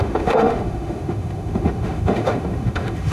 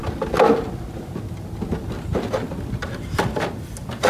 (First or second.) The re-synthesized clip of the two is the first